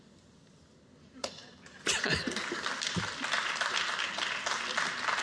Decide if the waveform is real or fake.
real